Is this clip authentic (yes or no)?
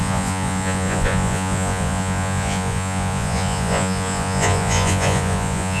no